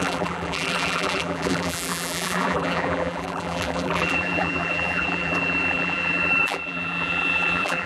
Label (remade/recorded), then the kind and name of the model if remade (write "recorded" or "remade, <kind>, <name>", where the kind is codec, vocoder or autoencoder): remade, vocoder, BigVGAN v2